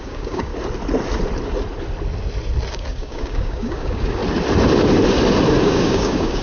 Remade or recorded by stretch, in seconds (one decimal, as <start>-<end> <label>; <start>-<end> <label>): 0.0-0.5 remade; 0.5-2.7 recorded; 2.7-4.2 remade; 4.2-5.6 recorded; 5.6-6.4 remade